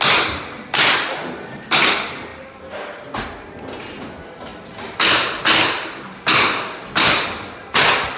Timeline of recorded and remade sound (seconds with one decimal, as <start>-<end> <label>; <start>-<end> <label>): 0.0-8.2 recorded